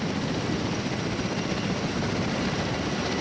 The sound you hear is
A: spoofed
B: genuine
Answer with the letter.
B